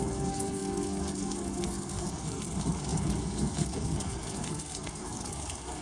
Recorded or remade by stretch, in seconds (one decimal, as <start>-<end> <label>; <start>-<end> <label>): 0.0-5.8 remade